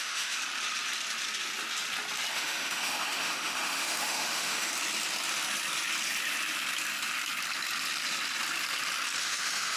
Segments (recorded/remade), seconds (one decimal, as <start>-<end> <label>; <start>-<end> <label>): 0.0-0.4 remade; 0.4-2.3 recorded; 2.3-4.7 remade; 4.7-9.2 recorded; 9.2-9.8 remade